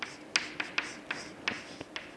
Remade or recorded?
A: recorded